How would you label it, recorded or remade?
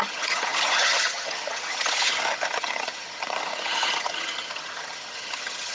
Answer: remade